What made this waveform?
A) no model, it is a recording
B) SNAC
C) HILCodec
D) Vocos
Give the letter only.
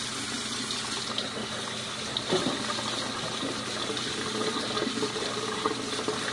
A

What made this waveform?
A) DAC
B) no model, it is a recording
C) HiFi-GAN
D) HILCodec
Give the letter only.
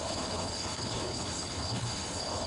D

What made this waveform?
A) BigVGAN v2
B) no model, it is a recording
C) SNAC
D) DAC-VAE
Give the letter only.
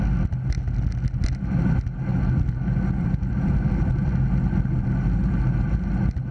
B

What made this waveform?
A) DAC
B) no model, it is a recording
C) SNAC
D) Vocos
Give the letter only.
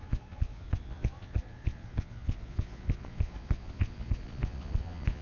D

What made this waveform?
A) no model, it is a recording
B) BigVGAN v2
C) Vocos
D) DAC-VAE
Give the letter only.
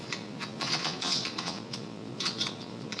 C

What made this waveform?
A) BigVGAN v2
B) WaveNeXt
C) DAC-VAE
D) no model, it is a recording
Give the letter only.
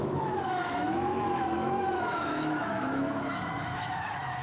C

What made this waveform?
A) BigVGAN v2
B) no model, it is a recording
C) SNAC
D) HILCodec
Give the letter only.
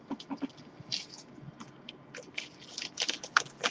B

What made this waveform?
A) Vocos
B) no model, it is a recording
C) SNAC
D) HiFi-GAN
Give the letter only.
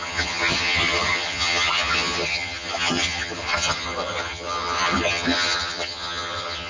D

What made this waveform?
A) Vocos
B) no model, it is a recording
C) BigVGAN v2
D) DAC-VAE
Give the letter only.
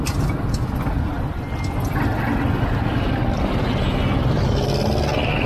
B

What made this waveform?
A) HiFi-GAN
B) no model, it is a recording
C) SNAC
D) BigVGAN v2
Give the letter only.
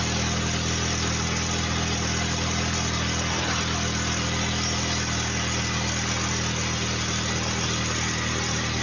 B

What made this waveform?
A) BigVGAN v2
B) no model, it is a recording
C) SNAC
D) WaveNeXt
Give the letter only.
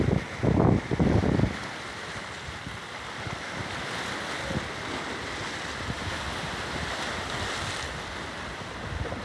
B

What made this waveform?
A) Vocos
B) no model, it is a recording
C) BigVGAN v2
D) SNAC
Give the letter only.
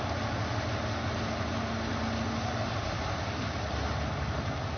B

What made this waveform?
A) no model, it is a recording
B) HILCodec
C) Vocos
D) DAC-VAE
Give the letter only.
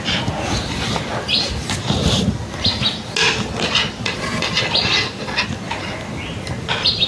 A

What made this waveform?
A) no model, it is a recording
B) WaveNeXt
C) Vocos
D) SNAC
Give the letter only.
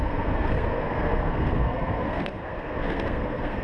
D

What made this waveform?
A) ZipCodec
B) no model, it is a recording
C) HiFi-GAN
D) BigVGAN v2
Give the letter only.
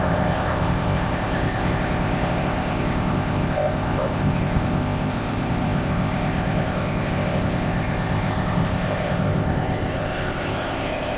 A